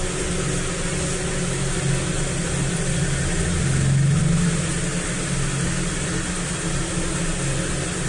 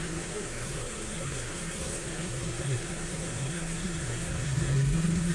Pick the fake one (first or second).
second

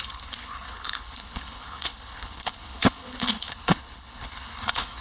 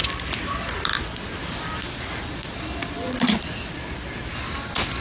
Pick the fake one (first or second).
first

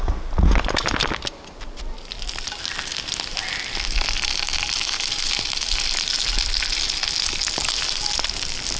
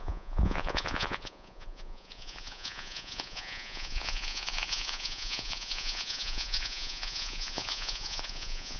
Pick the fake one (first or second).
second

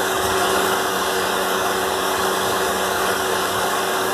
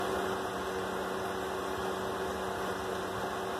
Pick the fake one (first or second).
first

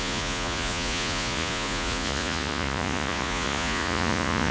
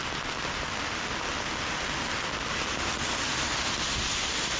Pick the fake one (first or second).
first